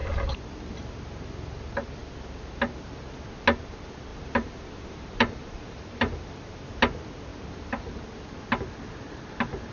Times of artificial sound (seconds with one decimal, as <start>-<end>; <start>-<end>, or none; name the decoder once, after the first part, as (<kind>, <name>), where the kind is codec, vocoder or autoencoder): 4.1-6.5 (vocoder, BigVGAN v2); 7.3-8.0